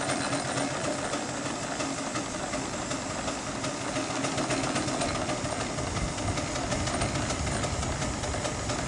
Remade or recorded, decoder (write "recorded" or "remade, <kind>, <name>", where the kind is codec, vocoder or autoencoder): recorded